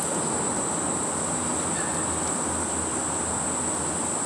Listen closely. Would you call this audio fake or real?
real